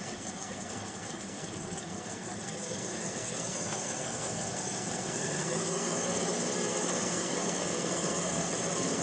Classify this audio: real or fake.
fake